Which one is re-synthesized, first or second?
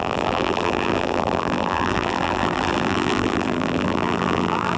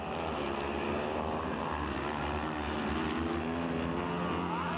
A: first